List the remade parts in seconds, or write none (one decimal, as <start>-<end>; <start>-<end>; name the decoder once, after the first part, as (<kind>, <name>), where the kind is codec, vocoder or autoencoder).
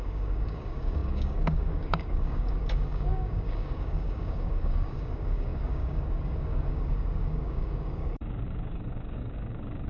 0.0-9.9 (codec, DAC)